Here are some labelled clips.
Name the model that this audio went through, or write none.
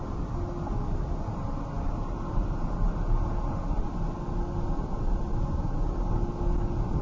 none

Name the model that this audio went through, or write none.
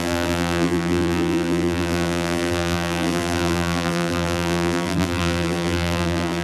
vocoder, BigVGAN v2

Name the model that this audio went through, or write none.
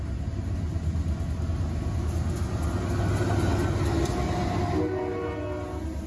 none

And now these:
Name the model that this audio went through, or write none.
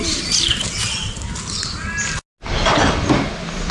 none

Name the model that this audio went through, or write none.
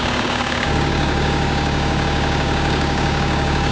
codec, DAC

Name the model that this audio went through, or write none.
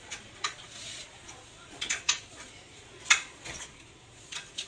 vocoder, Vocos